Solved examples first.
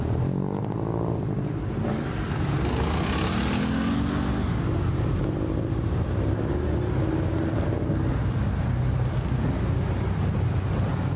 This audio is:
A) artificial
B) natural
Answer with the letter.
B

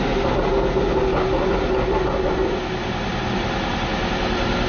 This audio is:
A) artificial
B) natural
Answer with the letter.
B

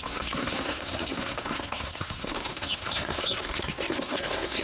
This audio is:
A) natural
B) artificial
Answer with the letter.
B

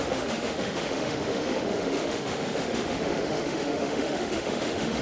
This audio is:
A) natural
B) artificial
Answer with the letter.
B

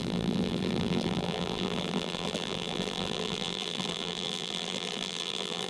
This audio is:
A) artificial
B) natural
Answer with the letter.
A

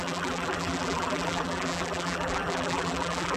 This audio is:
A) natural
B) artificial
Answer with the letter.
B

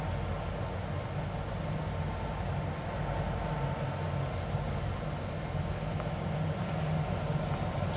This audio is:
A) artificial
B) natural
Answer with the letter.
B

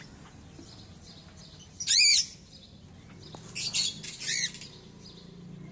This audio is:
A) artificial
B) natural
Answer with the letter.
B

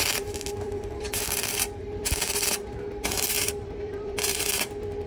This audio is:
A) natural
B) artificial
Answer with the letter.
B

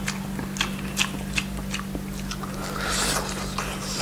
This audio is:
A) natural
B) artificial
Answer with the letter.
A